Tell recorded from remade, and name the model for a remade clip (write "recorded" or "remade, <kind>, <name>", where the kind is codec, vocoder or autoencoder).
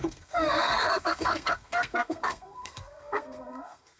remade, codec, SNAC